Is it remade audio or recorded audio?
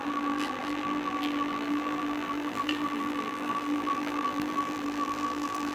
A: remade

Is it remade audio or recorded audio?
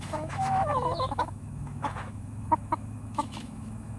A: remade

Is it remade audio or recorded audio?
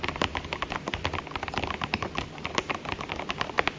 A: remade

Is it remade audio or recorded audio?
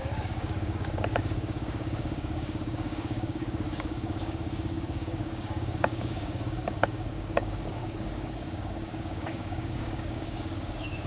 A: remade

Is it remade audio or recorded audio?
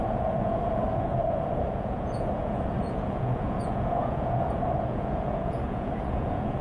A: remade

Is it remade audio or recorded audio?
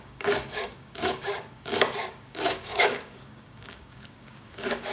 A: remade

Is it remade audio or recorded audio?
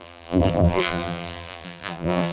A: remade